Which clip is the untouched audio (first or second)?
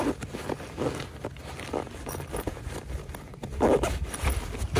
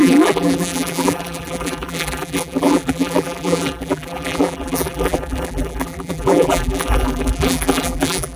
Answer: first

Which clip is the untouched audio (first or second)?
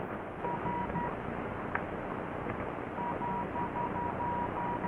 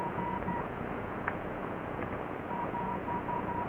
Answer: first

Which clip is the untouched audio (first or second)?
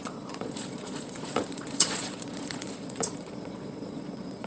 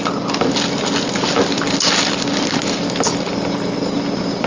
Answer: second